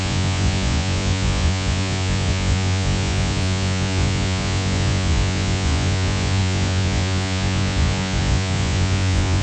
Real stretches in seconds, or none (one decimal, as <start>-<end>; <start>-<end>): none